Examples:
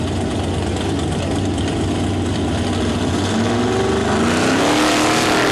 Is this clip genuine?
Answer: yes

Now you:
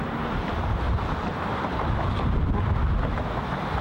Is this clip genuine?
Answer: yes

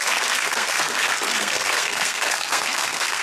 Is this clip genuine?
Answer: no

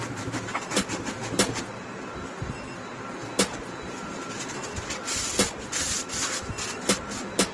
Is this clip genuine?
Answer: yes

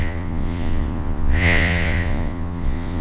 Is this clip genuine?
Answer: no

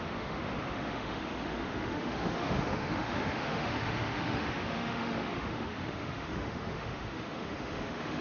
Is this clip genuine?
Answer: no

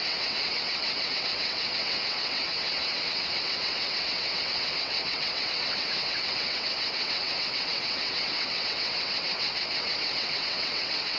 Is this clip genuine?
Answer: no